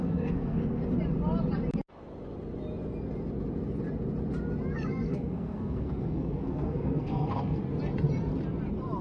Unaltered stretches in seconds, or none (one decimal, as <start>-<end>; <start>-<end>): 0.8-4.9; 7.6-9.0